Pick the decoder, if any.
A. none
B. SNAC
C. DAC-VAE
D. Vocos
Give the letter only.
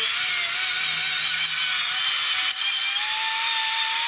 A